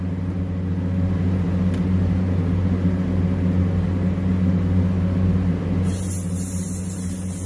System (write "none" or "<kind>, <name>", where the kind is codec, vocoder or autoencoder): none